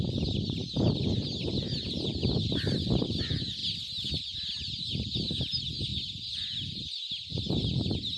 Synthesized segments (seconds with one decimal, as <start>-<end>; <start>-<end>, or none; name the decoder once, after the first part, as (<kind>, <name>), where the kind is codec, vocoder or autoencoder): 0.0-3.6 (vocoder, BigVGAN v2); 4.6-8.2